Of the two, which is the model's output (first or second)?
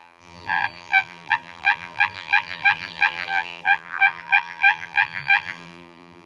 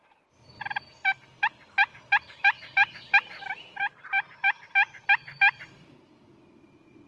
first